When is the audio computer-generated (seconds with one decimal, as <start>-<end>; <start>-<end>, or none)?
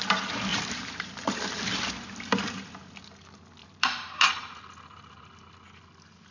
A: 0.5-1.2; 3.6-5.3